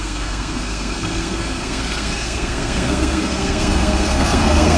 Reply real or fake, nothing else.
fake